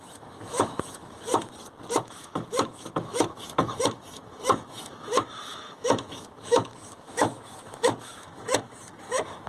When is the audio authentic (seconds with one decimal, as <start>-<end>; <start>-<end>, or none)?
1.3-2.0